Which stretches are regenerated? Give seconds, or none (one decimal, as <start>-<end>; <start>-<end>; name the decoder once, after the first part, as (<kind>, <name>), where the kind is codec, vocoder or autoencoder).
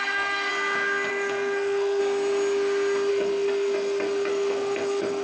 0.0-0.5 (codec, SNAC); 1.1-2.0; 3.1-5.2